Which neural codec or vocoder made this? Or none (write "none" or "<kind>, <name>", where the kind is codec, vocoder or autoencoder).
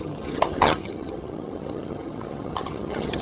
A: vocoder, HiFi-GAN